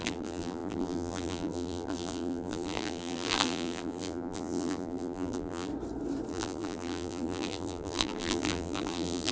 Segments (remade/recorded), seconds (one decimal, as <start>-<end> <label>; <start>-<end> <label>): 0.0-5.7 remade; 5.7-6.3 recorded; 6.3-9.3 remade